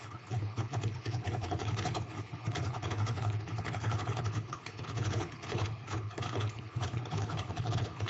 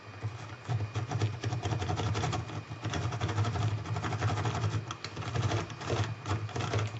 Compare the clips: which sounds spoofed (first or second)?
first